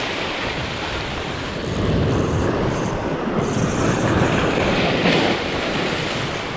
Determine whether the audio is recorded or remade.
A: remade